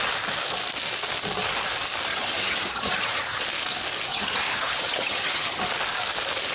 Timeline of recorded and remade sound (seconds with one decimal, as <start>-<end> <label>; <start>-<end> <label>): 0.0-2.1 recorded; 2.1-3.4 remade; 3.4-4.1 recorded; 4.1-5.6 remade; 5.6-6.5 recorded